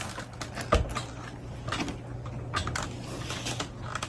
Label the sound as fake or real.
real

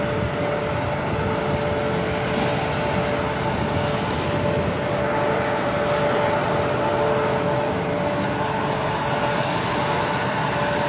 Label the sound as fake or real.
real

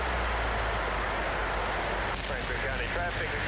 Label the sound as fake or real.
real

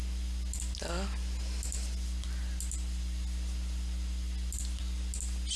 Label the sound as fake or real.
real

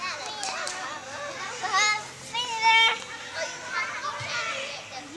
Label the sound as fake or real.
real